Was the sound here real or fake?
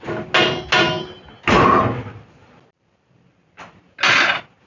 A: real